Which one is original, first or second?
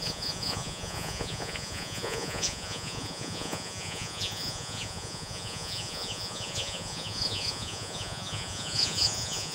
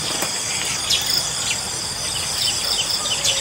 second